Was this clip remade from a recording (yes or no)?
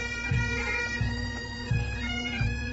yes